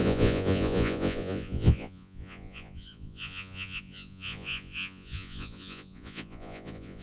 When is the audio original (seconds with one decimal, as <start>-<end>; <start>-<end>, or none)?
none